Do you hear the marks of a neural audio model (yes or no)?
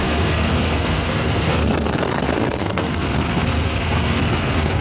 yes